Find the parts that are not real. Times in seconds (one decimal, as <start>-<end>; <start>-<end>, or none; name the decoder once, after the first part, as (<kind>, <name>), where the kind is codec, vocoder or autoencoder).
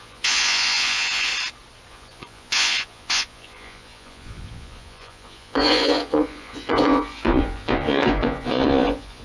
0.0-1.3 (vocoder, Vocos); 1.9-9.2